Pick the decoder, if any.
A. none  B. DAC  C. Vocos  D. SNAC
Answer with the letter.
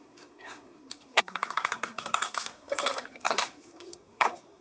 D